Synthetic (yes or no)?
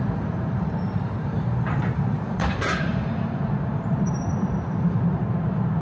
yes